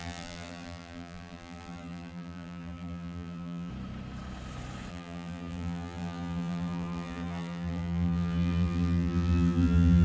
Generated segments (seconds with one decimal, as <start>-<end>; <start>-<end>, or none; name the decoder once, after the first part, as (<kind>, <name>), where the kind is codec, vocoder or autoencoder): 0.0-3.7 (vocoder, BigVGAN v2); 4.9-10.0